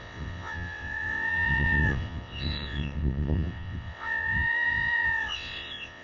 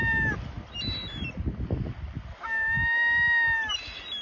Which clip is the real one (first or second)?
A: second